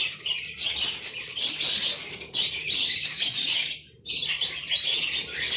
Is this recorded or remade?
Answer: recorded